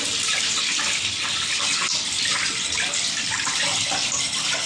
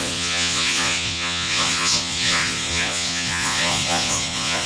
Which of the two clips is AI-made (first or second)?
second